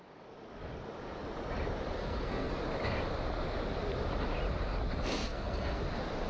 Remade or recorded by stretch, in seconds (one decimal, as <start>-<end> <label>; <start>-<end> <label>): 0.0-2.0 recorded; 2.0-2.5 remade; 2.5-5.2 recorded; 5.2-5.8 remade; 5.8-6.3 recorded